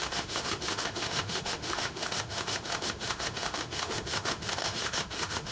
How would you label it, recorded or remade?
remade